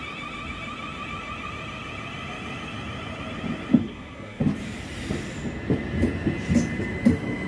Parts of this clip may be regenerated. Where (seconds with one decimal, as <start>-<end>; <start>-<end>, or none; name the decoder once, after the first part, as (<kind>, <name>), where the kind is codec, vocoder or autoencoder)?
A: 3.8-4.4 (codec, SNAC)